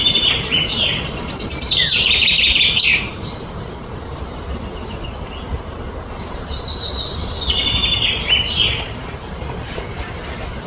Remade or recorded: remade